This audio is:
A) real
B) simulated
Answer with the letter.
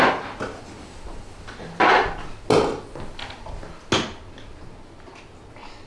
A